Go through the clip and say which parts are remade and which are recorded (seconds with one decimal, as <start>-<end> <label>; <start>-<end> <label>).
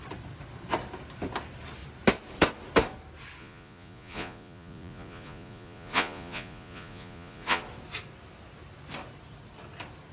0.0-3.4 recorded; 3.4-7.6 remade; 7.6-10.1 recorded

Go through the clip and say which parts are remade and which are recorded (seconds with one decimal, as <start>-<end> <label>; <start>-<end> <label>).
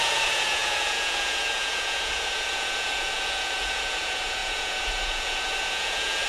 0.0-6.3 remade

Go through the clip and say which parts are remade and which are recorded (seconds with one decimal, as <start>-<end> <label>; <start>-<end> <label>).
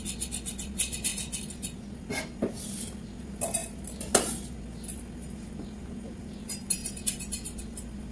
0.0-8.1 recorded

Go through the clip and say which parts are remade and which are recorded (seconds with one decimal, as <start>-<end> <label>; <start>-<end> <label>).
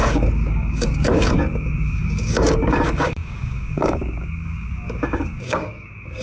0.0-6.2 remade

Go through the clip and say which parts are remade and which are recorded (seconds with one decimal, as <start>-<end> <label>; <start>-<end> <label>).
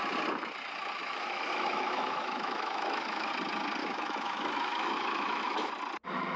0.0-1.0 recorded; 1.0-3.3 remade; 3.3-3.8 recorded; 3.8-5.7 remade; 5.7-6.4 recorded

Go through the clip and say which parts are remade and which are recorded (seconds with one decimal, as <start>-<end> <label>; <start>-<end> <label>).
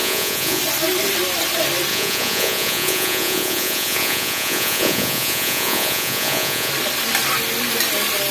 0.0-0.6 remade; 0.6-1.9 recorded; 1.9-6.7 remade; 6.7-8.3 recorded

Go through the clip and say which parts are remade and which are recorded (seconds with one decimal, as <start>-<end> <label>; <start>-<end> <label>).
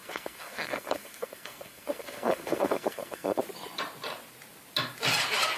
0.0-3.4 remade; 3.4-5.6 recorded